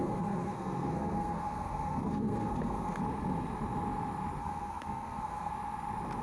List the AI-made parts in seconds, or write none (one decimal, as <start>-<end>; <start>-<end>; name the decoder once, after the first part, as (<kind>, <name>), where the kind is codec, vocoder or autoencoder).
0.0-3.0 (codec, SNAC); 4.4-5.5